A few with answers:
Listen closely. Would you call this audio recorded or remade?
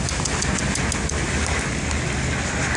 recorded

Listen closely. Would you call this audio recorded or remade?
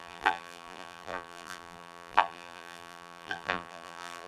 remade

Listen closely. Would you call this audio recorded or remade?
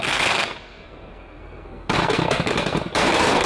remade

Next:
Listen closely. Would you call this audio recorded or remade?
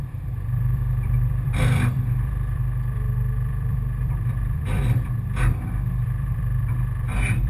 remade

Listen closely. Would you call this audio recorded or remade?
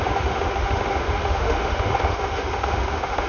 remade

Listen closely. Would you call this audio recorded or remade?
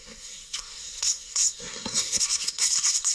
remade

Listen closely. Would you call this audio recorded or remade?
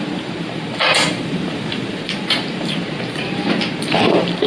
remade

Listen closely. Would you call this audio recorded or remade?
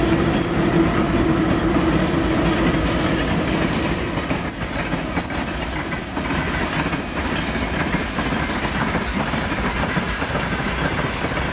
recorded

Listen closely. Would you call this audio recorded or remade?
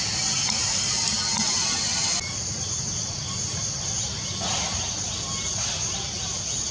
recorded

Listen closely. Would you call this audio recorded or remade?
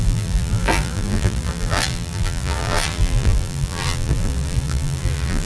remade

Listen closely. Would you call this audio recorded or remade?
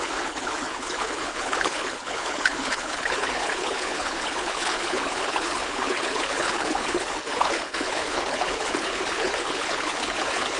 remade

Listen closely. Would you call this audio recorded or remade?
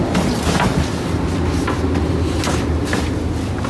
recorded